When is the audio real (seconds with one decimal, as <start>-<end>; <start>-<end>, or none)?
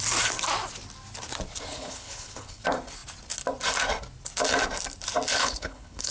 0.0-1.7; 2.6-5.4